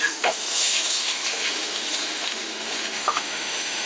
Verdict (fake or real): fake